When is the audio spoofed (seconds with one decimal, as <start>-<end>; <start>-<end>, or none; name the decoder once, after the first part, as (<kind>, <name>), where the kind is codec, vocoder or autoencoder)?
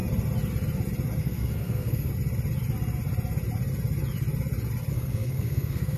1.2-2.1 (codec, SNAC); 4.9-6.0